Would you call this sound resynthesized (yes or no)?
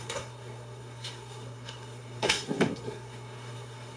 yes